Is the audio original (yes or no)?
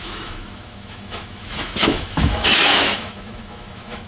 no